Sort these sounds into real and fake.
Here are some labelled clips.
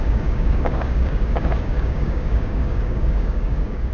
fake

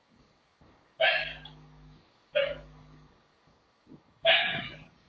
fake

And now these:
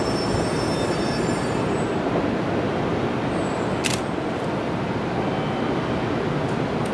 real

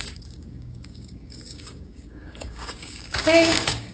fake